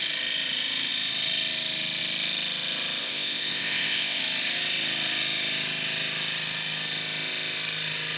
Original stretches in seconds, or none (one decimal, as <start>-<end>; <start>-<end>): 0.0-3.0; 4.2-8.2